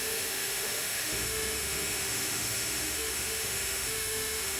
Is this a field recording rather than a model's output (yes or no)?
no